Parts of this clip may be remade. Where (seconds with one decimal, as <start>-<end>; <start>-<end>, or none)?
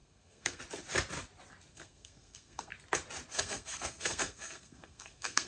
0.0-0.6; 1.7-2.7; 3.3-5.5